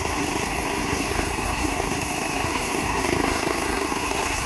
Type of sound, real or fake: fake